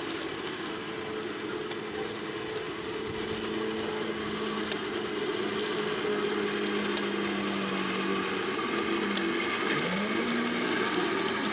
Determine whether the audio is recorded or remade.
recorded